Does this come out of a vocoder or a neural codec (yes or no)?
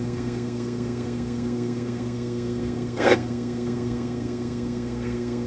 yes